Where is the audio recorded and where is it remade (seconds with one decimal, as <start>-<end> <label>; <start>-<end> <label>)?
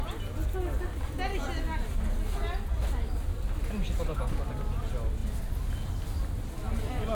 0.0-7.1 recorded